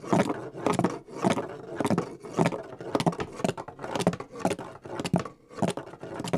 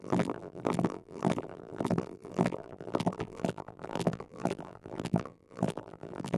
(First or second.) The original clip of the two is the first